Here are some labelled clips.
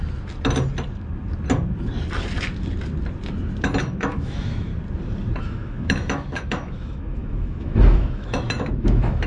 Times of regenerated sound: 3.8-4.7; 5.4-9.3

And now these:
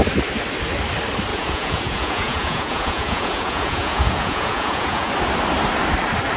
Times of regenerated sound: 1.3-5.1

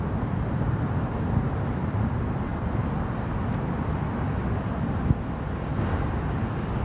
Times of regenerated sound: none

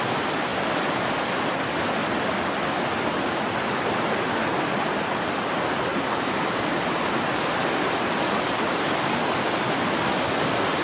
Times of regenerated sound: none

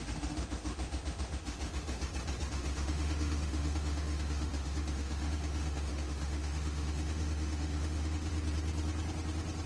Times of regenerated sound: 0.0-2.0; 2.5-8.3